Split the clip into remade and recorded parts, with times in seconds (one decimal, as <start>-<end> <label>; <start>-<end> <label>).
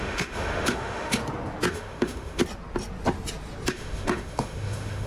0.0-1.2 remade; 1.2-1.7 recorded; 1.7-2.4 remade; 2.4-3.7 recorded; 3.7-5.1 remade